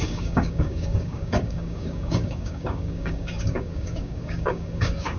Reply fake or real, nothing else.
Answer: fake